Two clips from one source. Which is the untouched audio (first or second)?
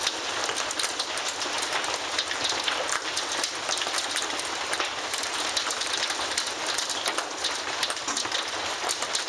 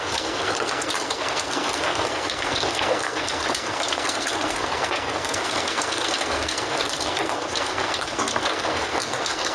first